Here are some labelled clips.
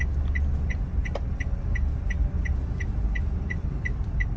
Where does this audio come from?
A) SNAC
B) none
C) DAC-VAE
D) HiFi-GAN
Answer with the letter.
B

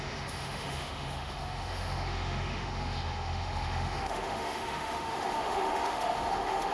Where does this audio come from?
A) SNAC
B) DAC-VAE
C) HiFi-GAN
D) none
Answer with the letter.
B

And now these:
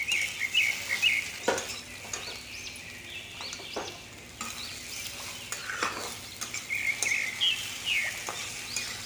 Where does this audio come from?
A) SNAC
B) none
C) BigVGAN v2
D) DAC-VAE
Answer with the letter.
B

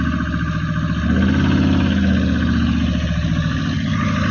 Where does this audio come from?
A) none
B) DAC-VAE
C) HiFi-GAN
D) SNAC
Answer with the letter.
A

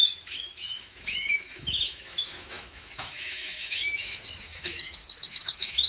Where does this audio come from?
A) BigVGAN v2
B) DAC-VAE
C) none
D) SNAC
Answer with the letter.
B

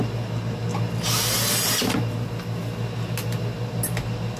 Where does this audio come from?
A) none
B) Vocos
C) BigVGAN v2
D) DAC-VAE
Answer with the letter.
A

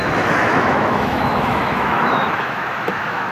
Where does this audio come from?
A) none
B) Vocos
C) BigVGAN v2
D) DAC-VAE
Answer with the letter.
D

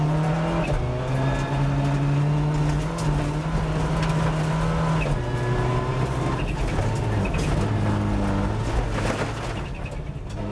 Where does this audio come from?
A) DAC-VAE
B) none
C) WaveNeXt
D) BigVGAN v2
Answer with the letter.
B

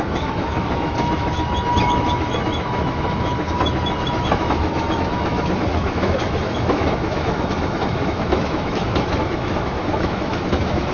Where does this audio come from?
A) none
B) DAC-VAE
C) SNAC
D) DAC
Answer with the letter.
B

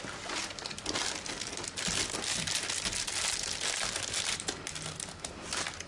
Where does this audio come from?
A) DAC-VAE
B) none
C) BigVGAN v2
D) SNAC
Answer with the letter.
B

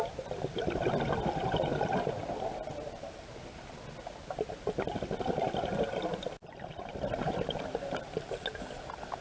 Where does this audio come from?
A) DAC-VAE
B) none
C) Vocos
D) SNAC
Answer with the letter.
B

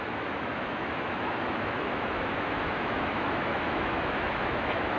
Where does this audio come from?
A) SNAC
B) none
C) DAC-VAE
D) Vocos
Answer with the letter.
C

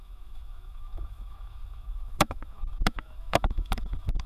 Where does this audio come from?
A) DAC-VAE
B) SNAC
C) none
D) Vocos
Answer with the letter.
A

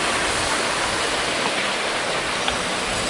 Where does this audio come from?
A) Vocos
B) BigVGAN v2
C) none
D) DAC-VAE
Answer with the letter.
C